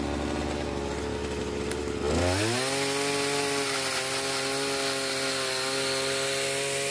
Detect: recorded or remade recorded